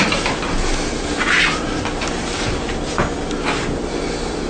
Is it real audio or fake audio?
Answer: real